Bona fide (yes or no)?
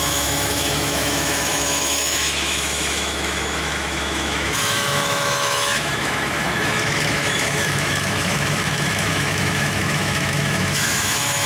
no